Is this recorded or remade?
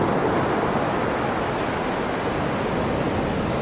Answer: recorded